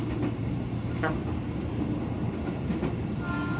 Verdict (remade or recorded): recorded